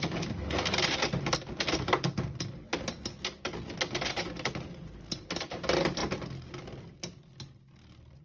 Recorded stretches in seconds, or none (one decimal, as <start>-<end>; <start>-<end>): 0.0-8.2